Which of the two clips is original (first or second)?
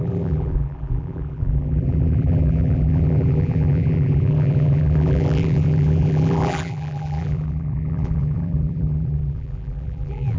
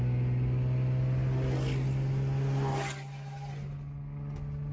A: second